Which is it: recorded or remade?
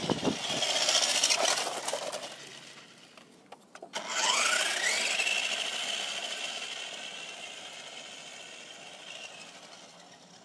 recorded